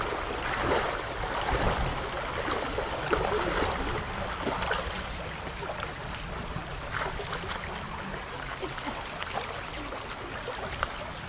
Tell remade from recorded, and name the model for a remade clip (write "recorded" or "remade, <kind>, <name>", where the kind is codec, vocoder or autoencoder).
recorded